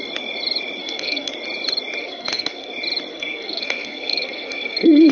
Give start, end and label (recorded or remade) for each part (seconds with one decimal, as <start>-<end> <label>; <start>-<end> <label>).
0.0-0.8 recorded; 0.8-1.3 remade; 1.3-2.0 recorded; 2.0-2.7 remade; 2.7-3.1 recorded; 3.1-5.1 remade